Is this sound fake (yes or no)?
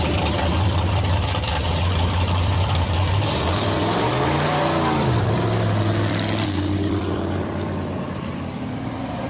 yes